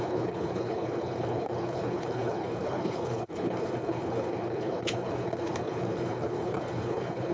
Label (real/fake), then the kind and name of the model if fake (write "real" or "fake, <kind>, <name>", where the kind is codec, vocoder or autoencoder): fake, codec, HILCodec